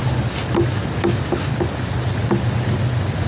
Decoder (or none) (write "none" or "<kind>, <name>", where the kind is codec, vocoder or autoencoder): none